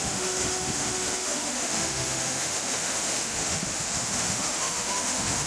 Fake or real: fake